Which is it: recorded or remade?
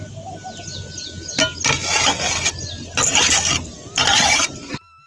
recorded